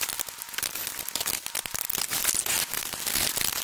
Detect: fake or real real